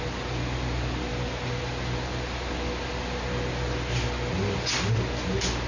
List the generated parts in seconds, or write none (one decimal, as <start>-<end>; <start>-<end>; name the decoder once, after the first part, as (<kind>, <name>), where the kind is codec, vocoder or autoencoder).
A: none